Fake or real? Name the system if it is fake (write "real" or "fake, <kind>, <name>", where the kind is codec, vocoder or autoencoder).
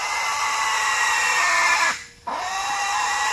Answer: real